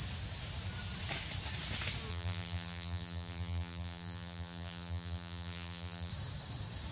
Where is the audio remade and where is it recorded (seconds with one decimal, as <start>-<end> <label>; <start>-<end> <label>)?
0.0-2.1 recorded; 2.1-6.1 remade; 6.1-6.9 recorded